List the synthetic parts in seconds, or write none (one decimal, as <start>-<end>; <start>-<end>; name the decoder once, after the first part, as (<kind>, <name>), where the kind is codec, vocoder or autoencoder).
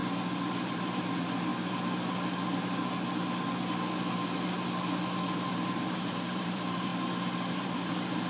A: 0.6-1.5 (vocoder, BigVGAN v2); 5.9-6.9; 7.5-8.3